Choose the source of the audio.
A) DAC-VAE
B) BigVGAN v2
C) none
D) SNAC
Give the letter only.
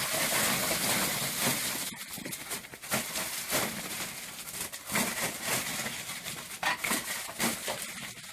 C